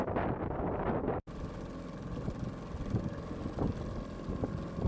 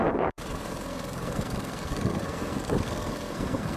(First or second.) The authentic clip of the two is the first